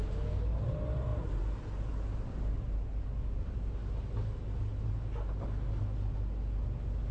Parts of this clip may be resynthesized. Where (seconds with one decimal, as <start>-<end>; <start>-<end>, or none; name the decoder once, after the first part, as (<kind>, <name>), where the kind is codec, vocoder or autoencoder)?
none